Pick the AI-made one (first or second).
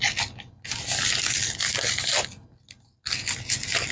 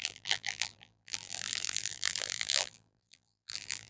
second